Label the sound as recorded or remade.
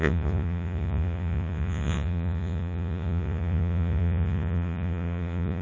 remade